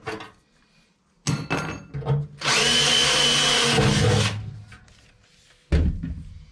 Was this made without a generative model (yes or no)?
yes